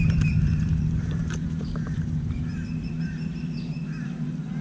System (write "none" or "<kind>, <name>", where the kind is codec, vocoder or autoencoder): vocoder, BigVGAN v2